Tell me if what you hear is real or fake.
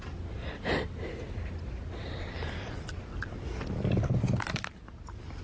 real